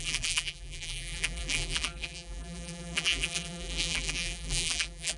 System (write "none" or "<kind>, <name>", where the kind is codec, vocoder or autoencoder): vocoder, BigVGAN v2